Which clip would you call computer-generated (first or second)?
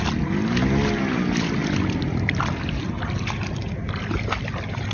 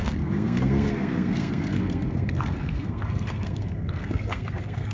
second